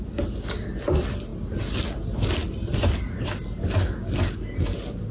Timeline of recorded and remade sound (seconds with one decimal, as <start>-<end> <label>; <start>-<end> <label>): 0.0-5.1 recorded